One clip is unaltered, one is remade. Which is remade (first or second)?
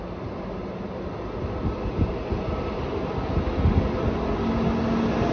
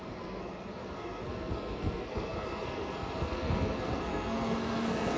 second